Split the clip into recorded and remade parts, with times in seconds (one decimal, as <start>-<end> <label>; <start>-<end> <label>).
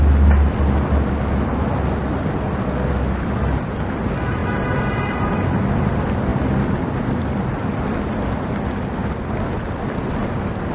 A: 0.0-10.7 recorded